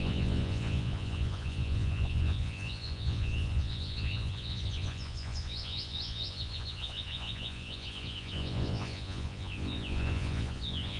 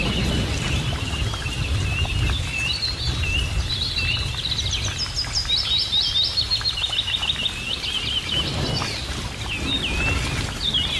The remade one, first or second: first